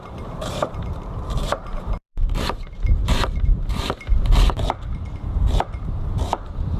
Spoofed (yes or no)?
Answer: yes